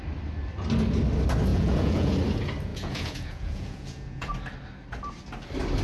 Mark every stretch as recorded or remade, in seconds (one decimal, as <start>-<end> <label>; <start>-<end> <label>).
0.0-1.5 recorded; 1.5-2.1 remade; 2.1-2.7 recorded; 2.7-4.3 remade; 4.3-5.8 recorded